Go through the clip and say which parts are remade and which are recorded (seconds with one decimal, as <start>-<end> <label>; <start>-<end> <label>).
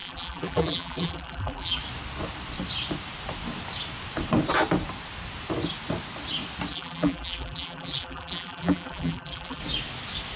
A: 0.0-1.8 remade; 1.8-6.7 recorded; 6.7-9.6 remade; 9.6-10.4 recorded